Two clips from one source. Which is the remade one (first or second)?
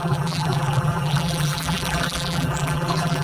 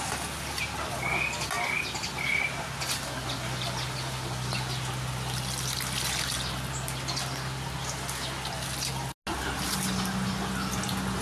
first